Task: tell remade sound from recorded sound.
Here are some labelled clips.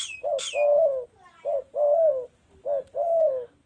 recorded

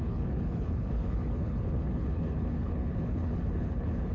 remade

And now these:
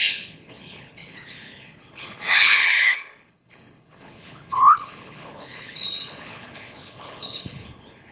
remade